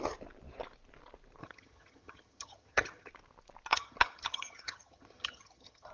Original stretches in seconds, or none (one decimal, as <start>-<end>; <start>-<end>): 0.0-1.4; 3.1-3.7